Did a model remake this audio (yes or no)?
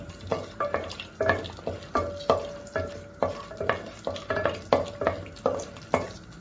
no